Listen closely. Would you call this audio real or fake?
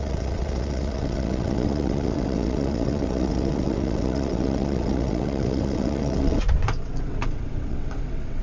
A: fake